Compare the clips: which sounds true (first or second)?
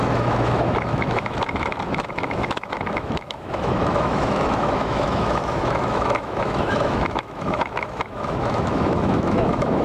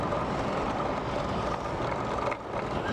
second